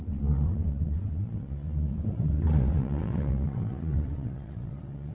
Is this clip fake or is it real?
fake